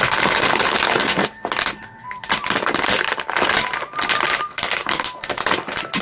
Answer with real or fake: real